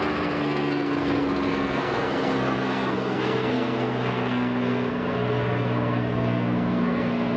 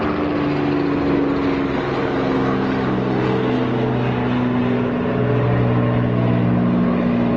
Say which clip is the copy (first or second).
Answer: first